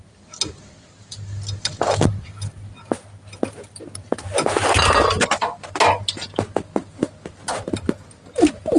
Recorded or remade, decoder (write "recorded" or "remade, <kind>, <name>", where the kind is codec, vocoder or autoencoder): recorded